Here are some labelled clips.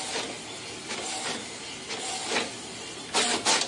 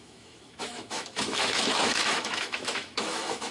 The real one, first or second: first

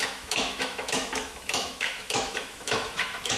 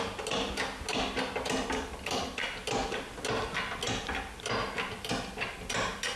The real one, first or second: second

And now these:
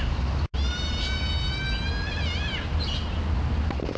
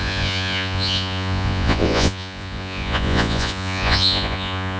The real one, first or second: first